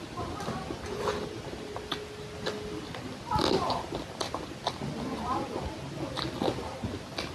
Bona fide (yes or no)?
yes